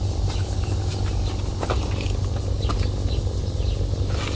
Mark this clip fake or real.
real